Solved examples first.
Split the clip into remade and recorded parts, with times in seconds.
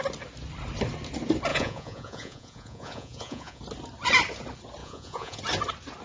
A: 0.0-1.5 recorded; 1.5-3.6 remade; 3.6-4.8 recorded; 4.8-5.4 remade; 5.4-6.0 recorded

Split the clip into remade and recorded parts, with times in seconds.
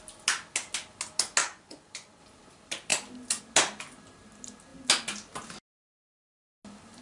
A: 0.0-1.4 recorded; 1.4-2.2 remade; 2.2-7.0 recorded